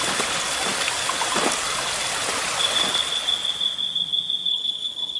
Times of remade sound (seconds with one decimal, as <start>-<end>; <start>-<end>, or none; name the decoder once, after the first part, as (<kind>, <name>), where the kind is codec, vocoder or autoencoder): 4.5-5.2 (codec, HILCodec)